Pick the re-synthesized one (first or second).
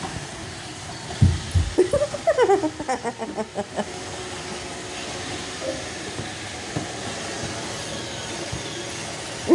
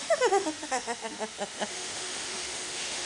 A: second